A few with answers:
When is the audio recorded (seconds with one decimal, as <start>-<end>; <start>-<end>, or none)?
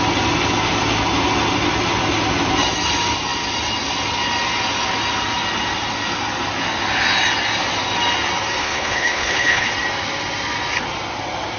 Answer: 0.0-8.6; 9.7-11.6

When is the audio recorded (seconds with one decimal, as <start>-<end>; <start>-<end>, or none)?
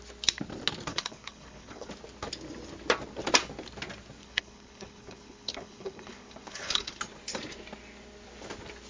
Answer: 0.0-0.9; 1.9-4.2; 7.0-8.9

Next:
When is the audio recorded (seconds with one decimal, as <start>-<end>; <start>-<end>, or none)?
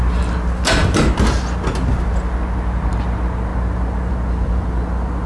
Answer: 0.0-5.3